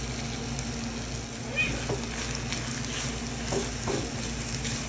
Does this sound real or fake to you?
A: real